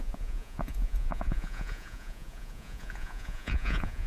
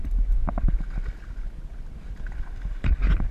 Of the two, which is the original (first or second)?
second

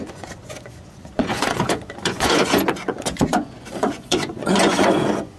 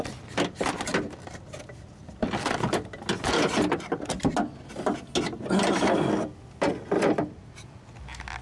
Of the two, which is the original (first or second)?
second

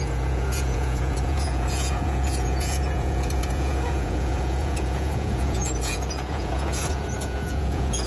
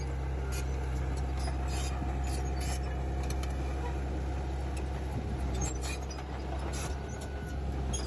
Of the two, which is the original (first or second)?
second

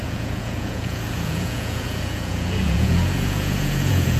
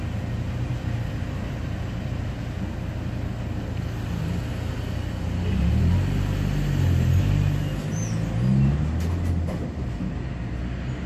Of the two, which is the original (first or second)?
second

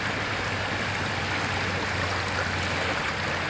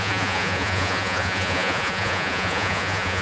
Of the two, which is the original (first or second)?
first